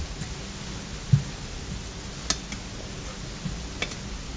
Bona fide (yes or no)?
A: yes